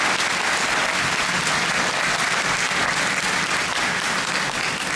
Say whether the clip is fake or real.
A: real